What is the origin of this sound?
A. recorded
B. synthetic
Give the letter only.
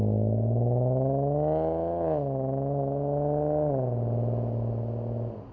A